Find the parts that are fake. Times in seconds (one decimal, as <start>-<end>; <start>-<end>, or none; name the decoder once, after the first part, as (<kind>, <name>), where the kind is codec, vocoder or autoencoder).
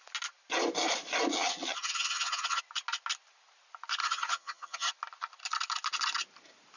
1.3-2.6 (vocoder, HiFi-GAN); 4.0-4.9